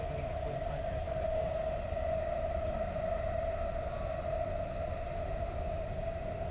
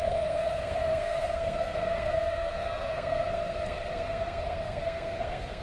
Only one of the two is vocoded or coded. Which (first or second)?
second